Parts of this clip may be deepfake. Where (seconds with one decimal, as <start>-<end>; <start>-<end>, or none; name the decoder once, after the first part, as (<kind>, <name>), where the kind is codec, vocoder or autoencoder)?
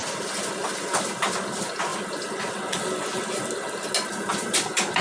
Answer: none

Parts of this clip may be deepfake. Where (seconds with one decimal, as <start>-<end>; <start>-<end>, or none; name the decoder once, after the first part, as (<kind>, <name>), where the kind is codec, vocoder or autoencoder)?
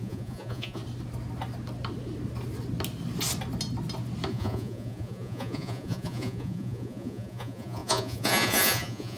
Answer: 0.0-0.8 (vocoder, Vocos); 4.3-9.2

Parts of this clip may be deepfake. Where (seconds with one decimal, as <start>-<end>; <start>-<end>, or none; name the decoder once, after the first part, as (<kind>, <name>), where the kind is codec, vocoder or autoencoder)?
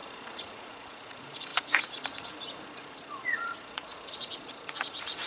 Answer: 0.0-5.3 (vocoder, Vocos)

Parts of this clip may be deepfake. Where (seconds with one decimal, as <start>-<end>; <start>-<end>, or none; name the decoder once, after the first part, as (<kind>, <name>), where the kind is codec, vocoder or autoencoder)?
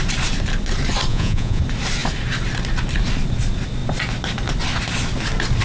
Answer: 1.1-1.6 (vocoder, Vocos)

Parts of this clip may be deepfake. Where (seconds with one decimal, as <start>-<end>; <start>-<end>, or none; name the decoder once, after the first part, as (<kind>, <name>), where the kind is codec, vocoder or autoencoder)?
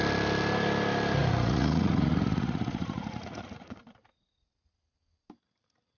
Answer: 1.2-3.8 (vocoder, Vocos)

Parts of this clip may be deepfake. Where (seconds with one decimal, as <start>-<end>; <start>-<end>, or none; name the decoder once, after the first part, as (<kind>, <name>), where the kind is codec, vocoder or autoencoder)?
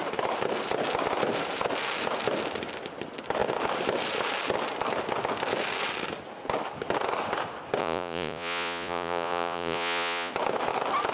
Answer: 7.8-10.3 (vocoder, Vocos)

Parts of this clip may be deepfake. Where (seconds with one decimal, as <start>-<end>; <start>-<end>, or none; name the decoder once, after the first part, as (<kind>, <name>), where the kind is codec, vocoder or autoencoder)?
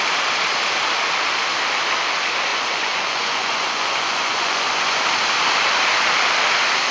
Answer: 2.5-5.0 (vocoder, Vocos)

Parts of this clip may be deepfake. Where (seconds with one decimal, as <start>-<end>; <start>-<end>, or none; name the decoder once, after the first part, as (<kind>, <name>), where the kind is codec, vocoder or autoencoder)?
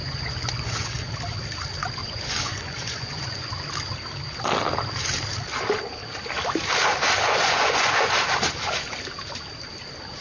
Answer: 0.0-1.1 (vocoder, Vocos); 2.0-3.5; 7.4-8.1